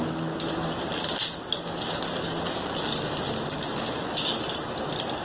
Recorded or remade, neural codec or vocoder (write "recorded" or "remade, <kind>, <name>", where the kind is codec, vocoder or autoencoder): recorded